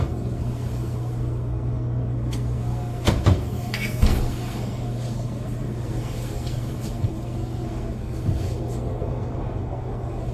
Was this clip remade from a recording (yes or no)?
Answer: yes